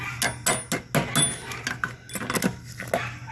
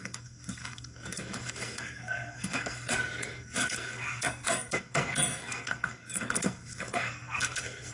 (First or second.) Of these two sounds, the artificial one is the second